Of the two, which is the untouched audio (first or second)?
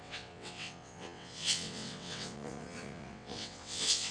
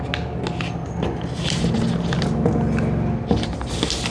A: second